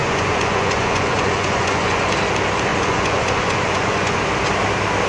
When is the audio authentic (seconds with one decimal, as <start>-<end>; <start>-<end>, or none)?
2.1-2.7; 4.2-5.1